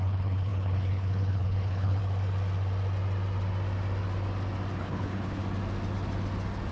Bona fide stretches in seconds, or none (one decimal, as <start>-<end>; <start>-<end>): 2.0-4.8; 5.4-6.7